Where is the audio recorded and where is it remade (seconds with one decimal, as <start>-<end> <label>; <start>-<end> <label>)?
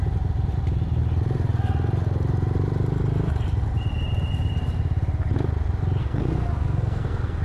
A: 0.0-6.0 recorded; 6.0-7.4 remade